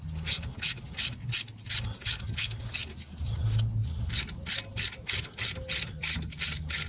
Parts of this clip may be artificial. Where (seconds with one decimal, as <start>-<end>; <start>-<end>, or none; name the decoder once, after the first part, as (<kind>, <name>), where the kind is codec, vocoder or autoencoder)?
none

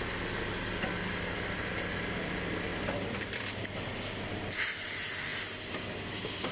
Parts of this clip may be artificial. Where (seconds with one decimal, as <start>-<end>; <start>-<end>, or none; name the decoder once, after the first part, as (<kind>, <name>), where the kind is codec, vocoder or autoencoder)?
none